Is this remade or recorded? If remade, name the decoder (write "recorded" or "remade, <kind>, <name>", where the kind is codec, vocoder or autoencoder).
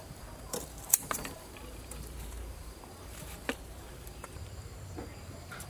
remade, vocoder, BigVGAN v2